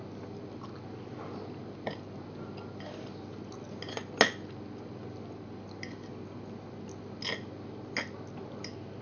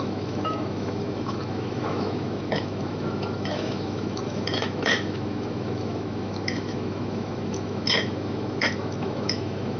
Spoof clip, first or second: second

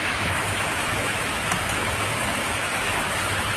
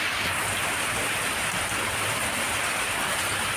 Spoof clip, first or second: first